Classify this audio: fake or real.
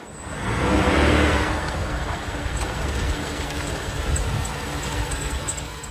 fake